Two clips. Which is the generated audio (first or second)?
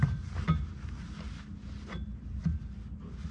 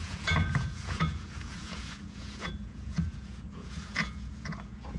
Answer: second